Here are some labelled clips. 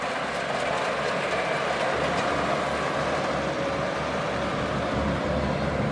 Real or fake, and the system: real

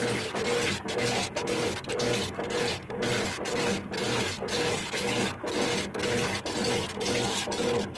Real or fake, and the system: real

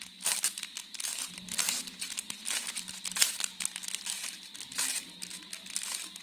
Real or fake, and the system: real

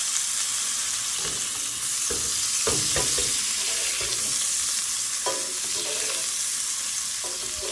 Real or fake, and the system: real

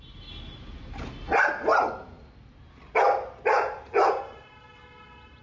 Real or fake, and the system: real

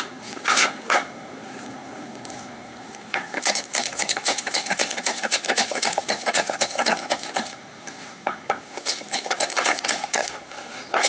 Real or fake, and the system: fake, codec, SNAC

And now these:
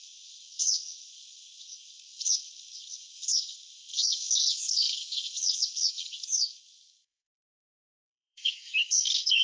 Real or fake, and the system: fake, codec, SNAC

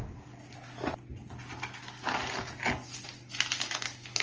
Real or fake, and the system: real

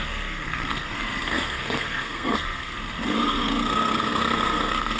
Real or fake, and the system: fake, codec, SNAC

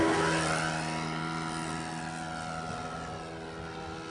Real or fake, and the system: real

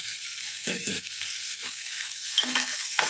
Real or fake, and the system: fake, codec, SNAC